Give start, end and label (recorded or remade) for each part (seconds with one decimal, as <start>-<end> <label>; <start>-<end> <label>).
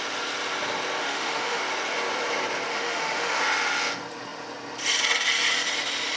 0.0-1.0 recorded; 1.0-1.6 remade; 1.6-2.7 recorded; 2.7-3.4 remade; 3.4-6.2 recorded